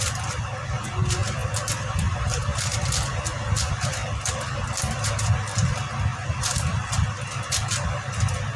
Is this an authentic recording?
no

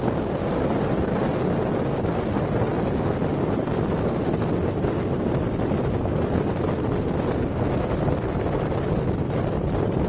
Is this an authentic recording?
yes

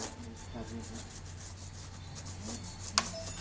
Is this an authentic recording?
yes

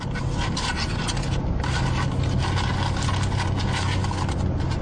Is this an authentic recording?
yes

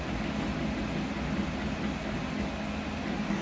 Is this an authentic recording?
yes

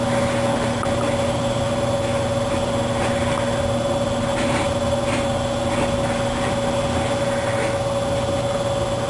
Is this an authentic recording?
yes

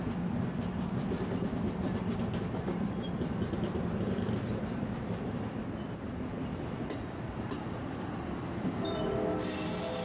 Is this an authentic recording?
yes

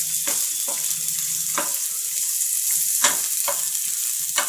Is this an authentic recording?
yes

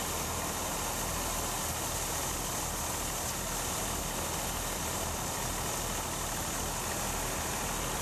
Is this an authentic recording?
yes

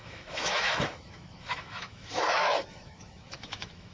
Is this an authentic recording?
no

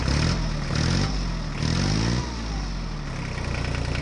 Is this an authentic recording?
yes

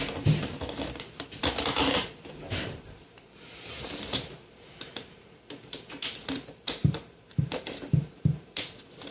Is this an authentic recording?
no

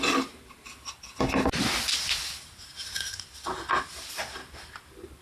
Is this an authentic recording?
yes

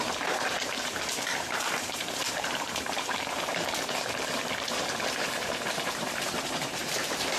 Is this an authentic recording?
no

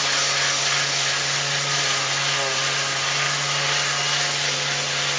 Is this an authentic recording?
yes